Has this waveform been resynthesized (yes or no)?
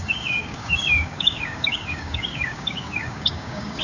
yes